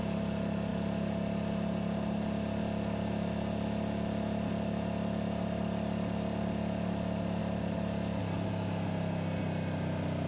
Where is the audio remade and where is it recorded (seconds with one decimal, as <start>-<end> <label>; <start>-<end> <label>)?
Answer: 0.0-10.3 recorded